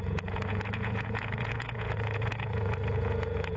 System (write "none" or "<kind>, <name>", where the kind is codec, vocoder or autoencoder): vocoder, Vocos